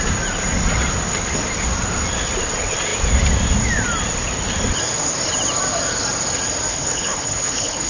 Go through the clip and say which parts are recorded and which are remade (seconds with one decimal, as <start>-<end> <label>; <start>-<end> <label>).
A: 0.0-6.7 recorded; 6.7-7.9 remade